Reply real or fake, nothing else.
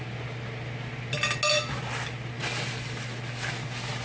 real